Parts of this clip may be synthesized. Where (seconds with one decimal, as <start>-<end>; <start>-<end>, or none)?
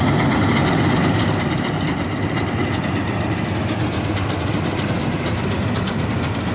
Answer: 1.0-1.7